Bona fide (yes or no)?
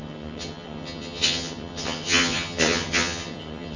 no